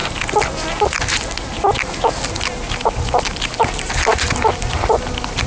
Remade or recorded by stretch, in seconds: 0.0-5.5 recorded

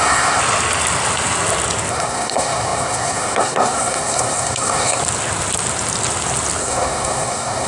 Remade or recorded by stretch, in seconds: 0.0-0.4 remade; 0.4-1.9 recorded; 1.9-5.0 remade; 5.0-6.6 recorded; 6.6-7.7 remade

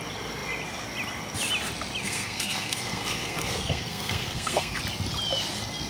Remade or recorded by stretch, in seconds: 0.0-2.0 recorded; 2.0-4.8 remade; 4.8-5.9 recorded

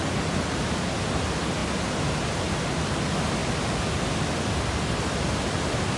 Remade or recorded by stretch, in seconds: 0.0-6.0 recorded